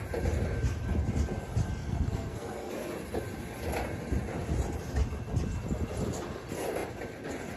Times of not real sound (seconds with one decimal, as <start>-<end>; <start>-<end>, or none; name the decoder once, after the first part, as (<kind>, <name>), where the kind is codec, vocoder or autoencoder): 1.8-2.7 (codec, SNAC)